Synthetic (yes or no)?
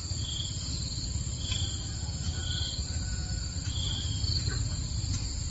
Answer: yes